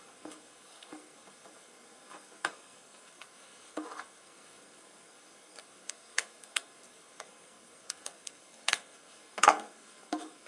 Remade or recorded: remade